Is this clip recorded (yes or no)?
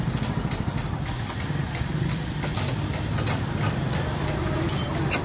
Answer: yes